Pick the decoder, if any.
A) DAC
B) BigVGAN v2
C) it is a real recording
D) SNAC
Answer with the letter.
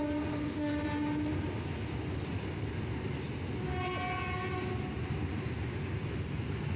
C